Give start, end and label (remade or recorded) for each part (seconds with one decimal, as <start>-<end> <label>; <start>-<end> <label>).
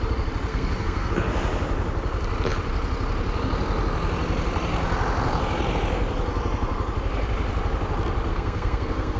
0.0-0.5 recorded; 0.5-1.1 remade; 1.1-8.3 recorded; 8.3-9.2 remade